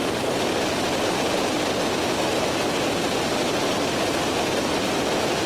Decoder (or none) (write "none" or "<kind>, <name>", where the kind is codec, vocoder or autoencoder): none